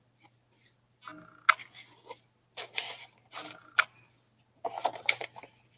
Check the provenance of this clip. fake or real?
real